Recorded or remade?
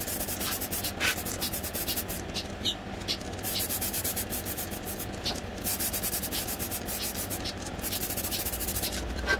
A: recorded